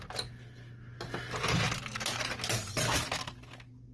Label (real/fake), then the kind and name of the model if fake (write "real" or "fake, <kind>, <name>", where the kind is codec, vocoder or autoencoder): real